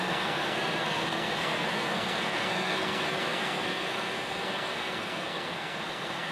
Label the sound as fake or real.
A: fake